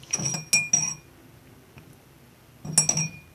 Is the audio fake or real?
real